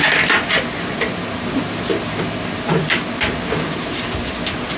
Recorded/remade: recorded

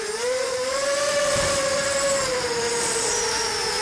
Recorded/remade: recorded